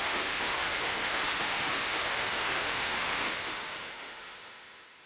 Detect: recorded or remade remade